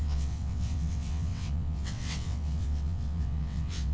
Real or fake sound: fake